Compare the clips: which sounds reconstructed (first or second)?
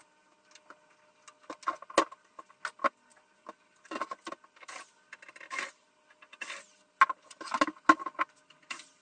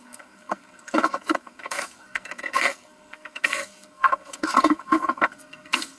second